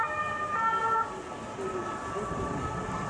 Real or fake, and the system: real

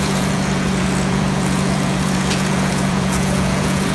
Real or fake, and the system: fake, vocoder, Vocos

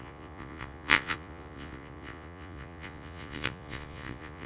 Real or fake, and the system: fake, vocoder, Vocos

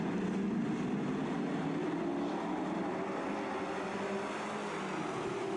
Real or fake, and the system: real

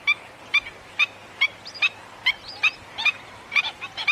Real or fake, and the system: fake, vocoder, BigVGAN v2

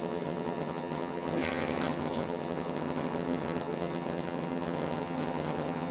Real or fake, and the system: fake, vocoder, HiFi-GAN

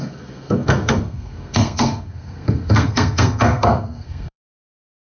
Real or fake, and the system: fake, codec, SNAC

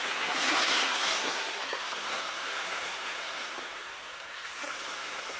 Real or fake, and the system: fake, codec, SNAC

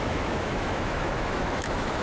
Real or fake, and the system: fake, autoencoder, DAC-VAE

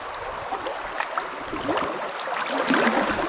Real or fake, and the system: real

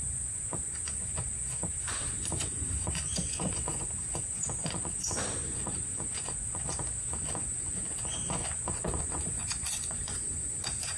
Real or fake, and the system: fake, vocoder, Vocos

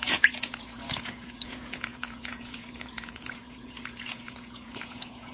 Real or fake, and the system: fake, vocoder, Vocos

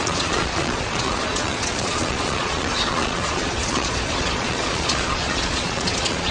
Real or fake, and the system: fake, vocoder, Vocos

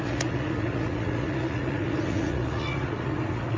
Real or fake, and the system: fake, vocoder, Vocos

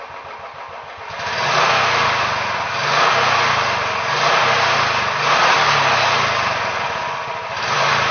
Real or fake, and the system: real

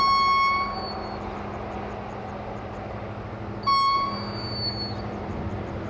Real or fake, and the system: real